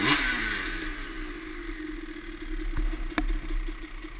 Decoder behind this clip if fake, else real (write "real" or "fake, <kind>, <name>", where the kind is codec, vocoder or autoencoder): real